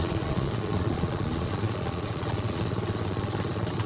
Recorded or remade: remade